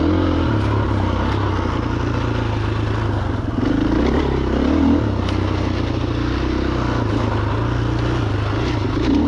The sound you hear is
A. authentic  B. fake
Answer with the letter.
A